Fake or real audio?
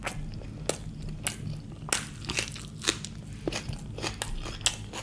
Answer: real